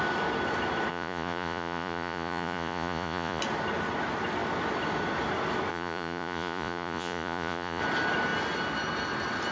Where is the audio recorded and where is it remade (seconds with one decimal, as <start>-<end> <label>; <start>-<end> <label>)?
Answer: 0.0-0.9 recorded; 0.9-3.4 remade; 3.4-5.7 recorded; 5.7-7.8 remade; 7.8-9.5 recorded